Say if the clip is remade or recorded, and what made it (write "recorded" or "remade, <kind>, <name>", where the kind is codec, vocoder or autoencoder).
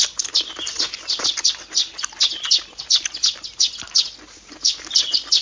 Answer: recorded